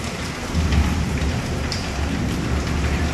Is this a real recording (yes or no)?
yes